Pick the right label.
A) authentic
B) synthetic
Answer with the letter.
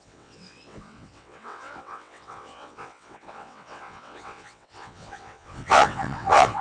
B